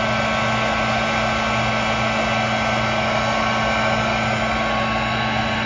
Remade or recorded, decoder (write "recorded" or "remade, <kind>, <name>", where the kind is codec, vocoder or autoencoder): recorded